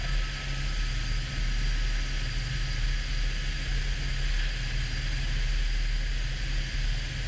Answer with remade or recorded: recorded